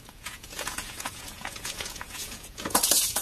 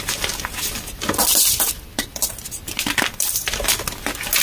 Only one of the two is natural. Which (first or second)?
second